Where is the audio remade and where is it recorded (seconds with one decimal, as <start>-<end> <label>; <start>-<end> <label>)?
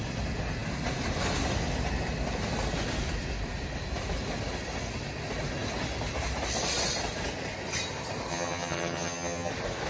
0.0-8.3 recorded; 8.3-9.5 remade; 9.5-9.9 recorded